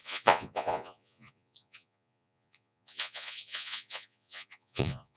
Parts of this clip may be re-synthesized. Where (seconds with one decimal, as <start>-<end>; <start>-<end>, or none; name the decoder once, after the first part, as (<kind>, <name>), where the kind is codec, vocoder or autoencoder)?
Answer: 0.0-5.2 (vocoder, Vocos)